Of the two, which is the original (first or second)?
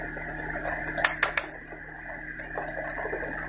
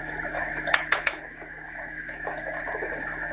first